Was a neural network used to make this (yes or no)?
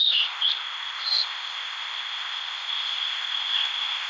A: yes